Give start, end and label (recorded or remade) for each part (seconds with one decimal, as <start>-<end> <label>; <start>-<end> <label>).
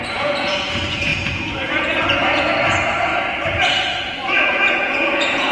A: 0.0-3.1 remade; 3.1-4.0 recorded; 4.0-5.5 remade